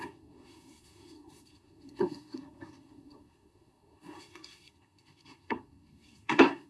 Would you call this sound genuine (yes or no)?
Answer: no